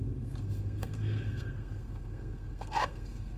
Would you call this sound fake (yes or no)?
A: yes